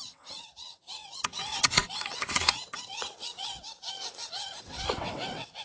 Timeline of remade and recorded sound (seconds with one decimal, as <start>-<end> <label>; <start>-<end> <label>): 0.0-5.6 remade